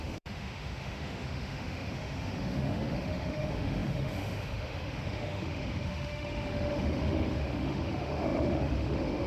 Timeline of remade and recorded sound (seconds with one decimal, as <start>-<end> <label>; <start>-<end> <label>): 0.0-9.3 remade